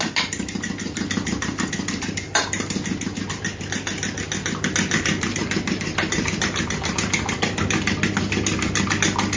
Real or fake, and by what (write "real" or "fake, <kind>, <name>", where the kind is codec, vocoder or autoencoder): real